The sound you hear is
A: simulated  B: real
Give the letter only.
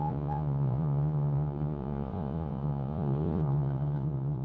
A